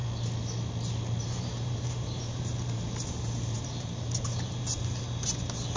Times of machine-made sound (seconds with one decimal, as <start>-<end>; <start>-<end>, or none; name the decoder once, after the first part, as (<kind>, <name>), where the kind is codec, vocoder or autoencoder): 1.2-5.8 (vocoder, BigVGAN v2)